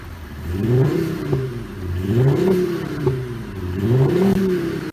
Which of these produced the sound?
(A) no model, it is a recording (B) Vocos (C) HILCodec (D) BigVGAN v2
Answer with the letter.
D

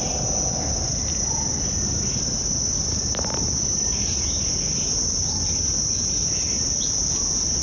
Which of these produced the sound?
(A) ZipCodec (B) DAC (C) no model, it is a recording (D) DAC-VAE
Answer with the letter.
C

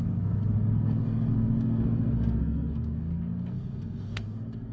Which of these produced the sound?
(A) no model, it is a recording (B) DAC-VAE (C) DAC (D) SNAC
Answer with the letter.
D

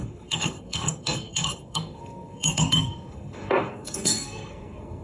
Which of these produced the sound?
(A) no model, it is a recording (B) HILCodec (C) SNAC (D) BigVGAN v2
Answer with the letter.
C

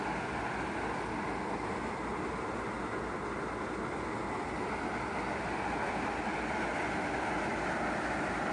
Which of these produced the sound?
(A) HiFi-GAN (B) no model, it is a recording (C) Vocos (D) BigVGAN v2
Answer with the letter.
B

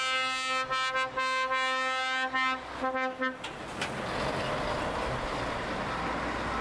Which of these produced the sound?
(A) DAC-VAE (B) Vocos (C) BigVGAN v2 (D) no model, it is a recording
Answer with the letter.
D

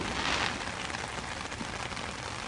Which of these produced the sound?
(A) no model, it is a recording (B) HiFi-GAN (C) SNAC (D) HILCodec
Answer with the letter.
A